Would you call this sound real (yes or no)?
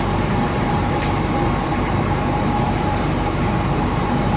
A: no